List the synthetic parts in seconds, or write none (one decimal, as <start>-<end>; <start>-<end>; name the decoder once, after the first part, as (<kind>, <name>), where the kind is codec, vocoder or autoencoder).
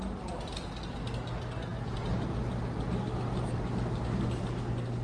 none